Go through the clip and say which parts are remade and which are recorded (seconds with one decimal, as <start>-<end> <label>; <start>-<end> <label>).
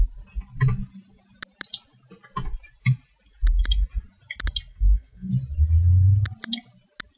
0.0-4.7 recorded; 4.7-5.3 remade; 5.3-7.2 recorded